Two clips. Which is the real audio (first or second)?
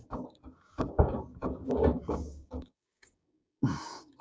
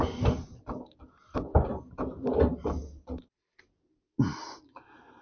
second